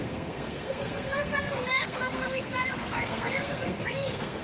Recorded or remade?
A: remade